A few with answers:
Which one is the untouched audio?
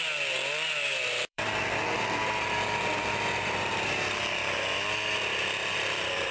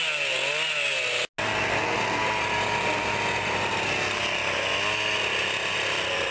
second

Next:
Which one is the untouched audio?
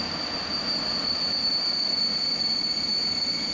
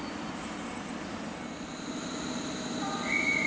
first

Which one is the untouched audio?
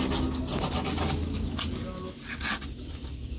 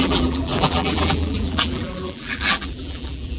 first